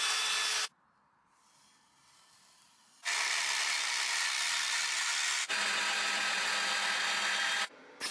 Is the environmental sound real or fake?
real